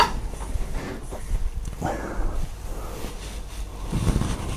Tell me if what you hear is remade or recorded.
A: remade